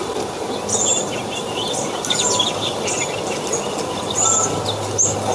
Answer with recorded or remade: recorded